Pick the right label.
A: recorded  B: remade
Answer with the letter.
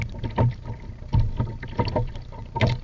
A